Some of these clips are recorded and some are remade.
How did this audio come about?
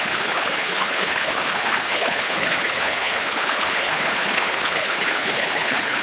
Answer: remade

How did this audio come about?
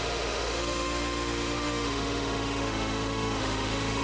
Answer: remade